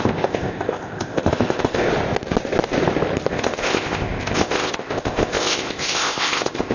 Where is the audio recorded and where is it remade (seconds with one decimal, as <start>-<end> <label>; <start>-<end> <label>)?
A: 0.0-1.9 remade; 1.9-3.3 recorded; 3.3-6.7 remade